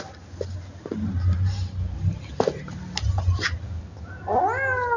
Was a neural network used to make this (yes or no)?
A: no